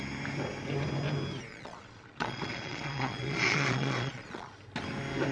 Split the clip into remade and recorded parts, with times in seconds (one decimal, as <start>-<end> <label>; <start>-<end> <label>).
0.0-1.5 recorded; 1.5-4.5 remade; 4.5-5.3 recorded